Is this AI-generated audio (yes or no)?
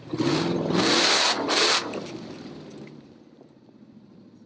yes